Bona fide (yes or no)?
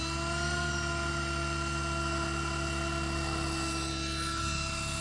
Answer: yes